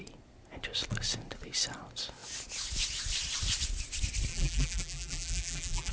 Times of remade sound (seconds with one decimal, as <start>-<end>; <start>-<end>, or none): 4.3-5.9